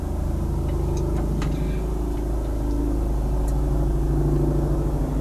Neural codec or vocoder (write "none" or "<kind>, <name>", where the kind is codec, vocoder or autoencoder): none